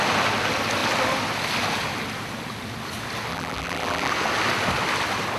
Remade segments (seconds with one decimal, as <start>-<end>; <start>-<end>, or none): 3.3-4.1